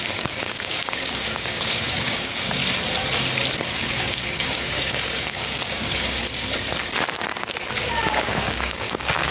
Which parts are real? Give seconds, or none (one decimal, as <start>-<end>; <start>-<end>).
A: 2.6-3.7; 6.2-7.9